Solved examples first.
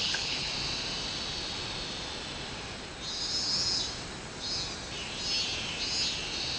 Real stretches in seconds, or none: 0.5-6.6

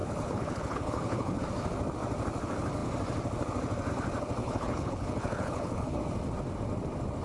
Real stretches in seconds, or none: 1.4-4.4; 6.0-7.2

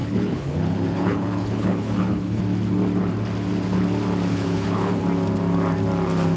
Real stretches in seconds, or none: 2.4-4.3; 5.0-6.4

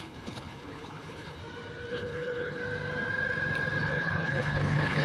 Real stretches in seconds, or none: 1.4-1.9; 2.6-3.8

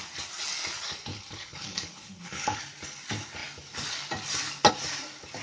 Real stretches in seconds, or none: 0.0-1.1; 2.6-5.4